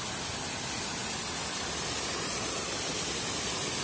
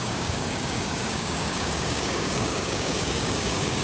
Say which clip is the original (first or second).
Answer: first